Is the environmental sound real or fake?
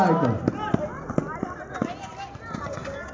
real